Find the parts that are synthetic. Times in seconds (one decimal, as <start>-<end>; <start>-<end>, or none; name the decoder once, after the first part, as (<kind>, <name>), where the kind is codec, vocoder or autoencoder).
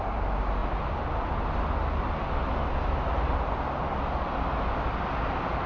none